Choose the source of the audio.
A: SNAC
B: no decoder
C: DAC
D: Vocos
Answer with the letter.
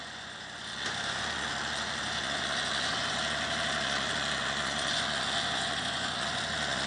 D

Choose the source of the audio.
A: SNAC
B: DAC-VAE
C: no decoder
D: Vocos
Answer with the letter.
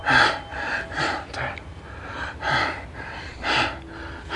C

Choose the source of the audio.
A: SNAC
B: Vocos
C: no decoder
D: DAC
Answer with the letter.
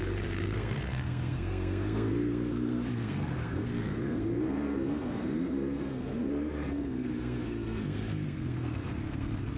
A